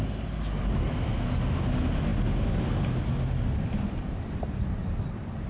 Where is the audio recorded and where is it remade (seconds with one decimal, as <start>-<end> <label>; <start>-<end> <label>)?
0.0-0.8 recorded; 0.8-1.3 remade; 1.3-5.5 recorded